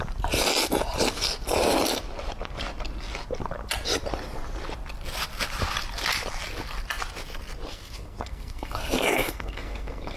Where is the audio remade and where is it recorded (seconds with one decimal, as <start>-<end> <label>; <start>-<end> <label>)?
0.0-7.7 recorded; 7.7-10.2 remade